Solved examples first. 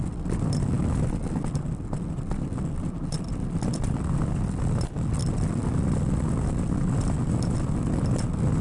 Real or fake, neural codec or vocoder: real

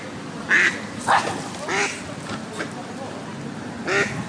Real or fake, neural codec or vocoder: real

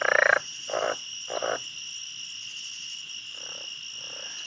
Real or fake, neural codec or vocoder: real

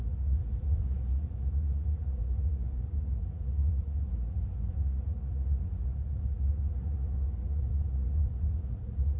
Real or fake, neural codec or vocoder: fake, vocoder, Vocos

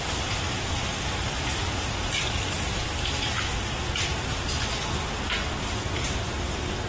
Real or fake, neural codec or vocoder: real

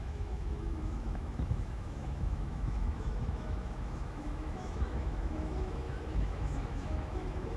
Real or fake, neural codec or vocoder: fake, autoencoder, DAC-VAE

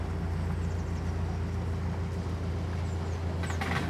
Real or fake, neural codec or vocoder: real